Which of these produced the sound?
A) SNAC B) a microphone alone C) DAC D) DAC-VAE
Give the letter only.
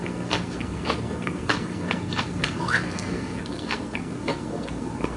A